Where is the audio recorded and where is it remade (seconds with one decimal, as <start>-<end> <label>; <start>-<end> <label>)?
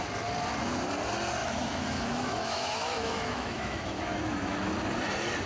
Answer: 0.0-1.4 recorded; 1.4-4.7 remade; 4.7-5.5 recorded